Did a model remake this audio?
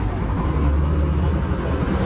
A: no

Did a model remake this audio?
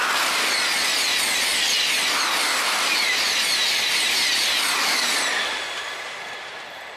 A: no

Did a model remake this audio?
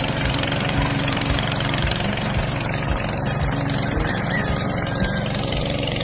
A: yes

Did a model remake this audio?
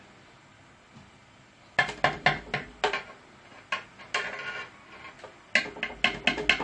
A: no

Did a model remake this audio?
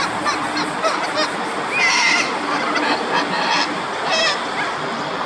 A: no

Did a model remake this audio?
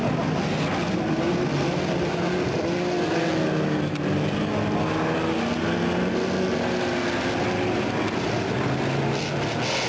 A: no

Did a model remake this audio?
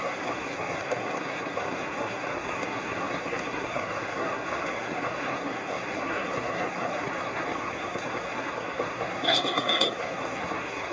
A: yes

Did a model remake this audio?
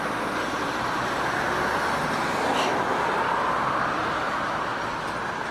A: no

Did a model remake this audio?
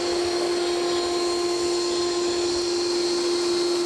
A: no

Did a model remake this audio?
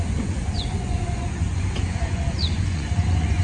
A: yes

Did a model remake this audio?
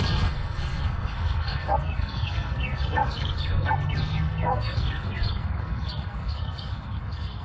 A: yes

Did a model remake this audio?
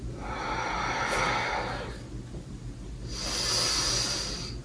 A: no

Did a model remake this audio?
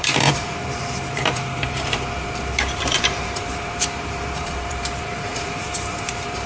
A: yes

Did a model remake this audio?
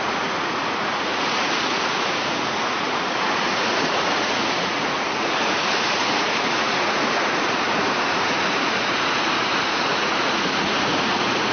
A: yes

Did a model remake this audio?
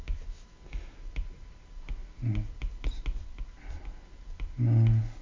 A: no